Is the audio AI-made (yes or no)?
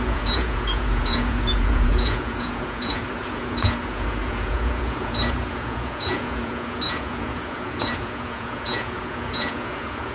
yes